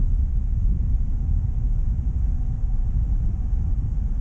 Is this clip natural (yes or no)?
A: yes